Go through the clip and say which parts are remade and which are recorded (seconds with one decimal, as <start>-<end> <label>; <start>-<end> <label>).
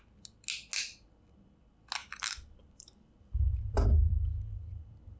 0.0-2.0 recorded; 2.0-5.2 remade